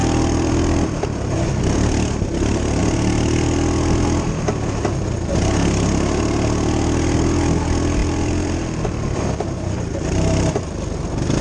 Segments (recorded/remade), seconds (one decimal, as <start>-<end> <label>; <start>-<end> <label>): 0.0-2.8 remade; 2.8-8.0 recorded; 8.0-10.6 remade; 10.6-11.4 recorded